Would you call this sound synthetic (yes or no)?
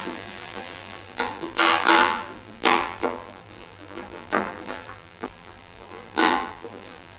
yes